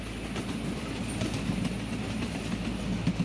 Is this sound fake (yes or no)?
no